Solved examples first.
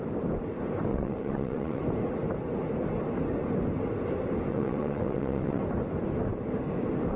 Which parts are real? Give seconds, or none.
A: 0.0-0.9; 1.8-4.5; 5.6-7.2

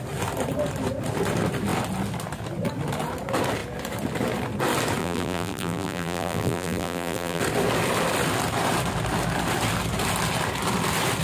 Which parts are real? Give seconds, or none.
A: 0.0-5.0; 7.4-11.2

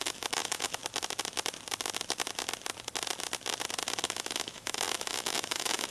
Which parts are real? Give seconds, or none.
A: 0.8-4.0

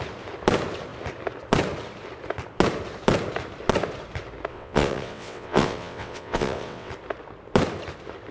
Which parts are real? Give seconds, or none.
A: 0.0-4.5; 6.9-8.3

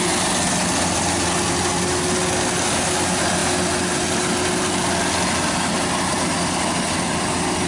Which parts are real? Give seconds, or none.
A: 0.0-7.7